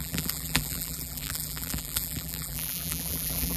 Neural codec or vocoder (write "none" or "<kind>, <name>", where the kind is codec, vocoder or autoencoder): vocoder, BigVGAN v2